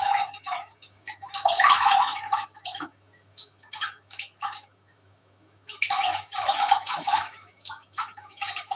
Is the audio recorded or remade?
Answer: remade